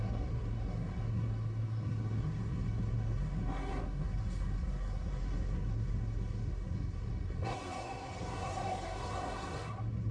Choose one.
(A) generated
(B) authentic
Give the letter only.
A